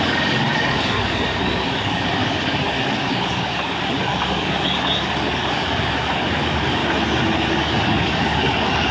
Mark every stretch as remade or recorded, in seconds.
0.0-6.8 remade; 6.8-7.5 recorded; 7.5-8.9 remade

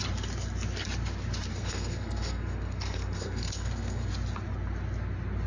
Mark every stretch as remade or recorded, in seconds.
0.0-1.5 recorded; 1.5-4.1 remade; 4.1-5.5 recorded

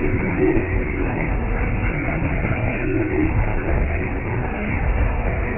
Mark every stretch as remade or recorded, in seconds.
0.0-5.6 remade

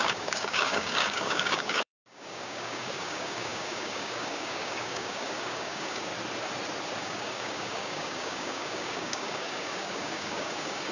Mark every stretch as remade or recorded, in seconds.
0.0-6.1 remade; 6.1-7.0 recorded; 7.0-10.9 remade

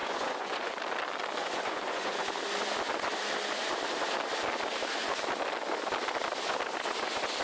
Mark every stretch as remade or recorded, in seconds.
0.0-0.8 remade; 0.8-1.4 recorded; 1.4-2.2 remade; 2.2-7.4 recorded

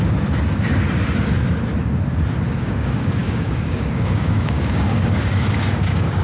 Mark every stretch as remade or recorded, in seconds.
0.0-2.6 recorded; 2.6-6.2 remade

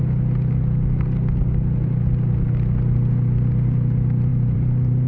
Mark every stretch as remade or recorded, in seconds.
0.0-4.3 recorded; 4.3-5.1 remade